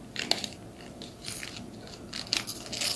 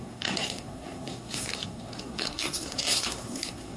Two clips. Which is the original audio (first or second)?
first